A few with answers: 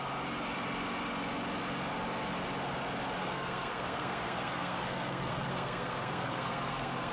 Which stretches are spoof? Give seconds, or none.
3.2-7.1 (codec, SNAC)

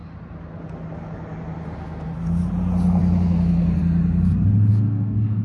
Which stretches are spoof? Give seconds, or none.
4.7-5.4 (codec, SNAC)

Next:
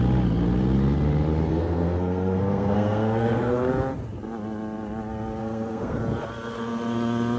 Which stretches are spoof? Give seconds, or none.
1.5-3.7 (codec, SNAC); 5.4-6.0

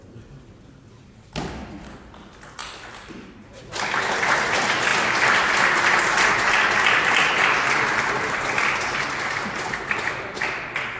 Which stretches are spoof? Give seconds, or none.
none

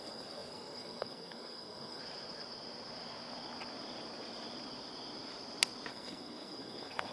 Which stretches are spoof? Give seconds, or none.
0.0-2.0 (codec, SNAC); 5.9-7.1

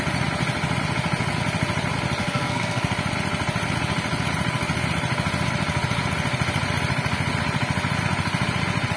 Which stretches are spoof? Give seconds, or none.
2.2-2.8 (codec, SNAC)

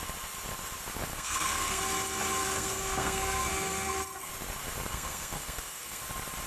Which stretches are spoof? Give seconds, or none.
1.1-1.8 (codec, SNAC); 2.4-4.3; 4.9-6.0

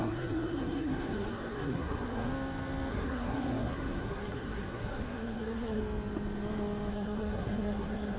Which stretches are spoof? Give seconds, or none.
0.0-2.3 (codec, SNAC); 2.9-5.8; 6.9-8.2